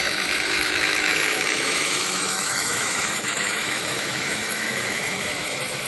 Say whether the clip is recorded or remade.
remade